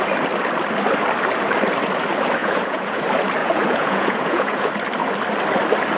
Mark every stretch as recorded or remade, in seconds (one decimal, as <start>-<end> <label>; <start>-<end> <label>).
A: 0.0-2.4 recorded; 2.4-3.0 remade; 3.0-3.4 recorded; 3.4-4.7 remade; 4.7-6.0 recorded

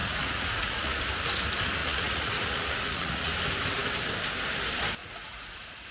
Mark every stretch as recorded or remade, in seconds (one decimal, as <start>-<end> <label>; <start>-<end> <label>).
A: 0.0-1.0 remade; 1.0-1.8 recorded; 1.8-3.3 remade; 3.3-5.0 recorded; 5.0-5.9 remade

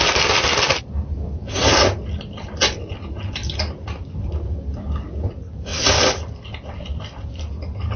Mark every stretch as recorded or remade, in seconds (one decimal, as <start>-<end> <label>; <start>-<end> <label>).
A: 0.0-8.0 recorded

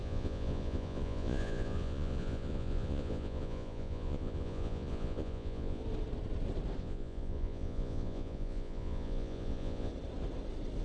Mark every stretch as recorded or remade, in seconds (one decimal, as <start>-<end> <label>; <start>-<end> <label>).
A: 0.0-5.8 remade; 5.8-6.8 recorded; 6.8-9.9 remade; 9.9-10.8 recorded